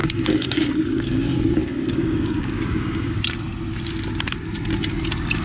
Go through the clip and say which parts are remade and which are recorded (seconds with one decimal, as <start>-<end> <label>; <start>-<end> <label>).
0.0-3.2 remade; 3.2-5.4 recorded